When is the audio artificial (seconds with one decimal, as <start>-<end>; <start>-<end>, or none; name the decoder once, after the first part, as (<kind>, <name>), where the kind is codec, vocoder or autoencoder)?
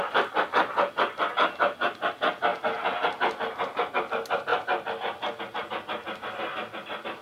none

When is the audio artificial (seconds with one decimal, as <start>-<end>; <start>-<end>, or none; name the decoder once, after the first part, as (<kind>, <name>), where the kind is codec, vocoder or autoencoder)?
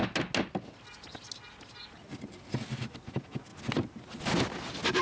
none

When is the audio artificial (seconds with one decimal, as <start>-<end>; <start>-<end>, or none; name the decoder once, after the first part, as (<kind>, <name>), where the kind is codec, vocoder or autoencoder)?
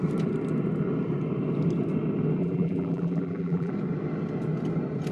2.4-3.7 (vocoder, BigVGAN v2)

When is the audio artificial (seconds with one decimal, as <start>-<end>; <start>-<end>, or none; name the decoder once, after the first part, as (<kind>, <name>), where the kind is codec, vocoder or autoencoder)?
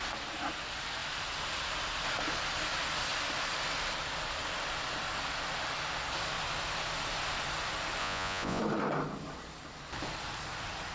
8.0-8.6 (vocoder, Vocos)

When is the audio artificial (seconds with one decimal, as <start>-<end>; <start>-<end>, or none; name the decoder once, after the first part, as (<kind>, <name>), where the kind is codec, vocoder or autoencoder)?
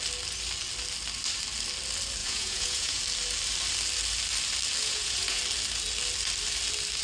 2.2-3.0 (vocoder, Vocos); 4.8-5.4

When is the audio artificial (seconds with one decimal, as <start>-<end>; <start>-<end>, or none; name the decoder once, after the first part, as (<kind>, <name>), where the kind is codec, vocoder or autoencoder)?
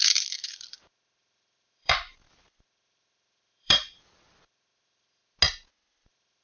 0.0-5.2 (vocoder, BigVGAN v2); 5.9-6.4